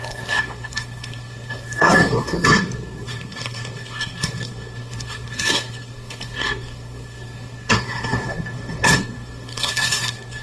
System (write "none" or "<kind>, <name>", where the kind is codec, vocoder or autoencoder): codec, SNAC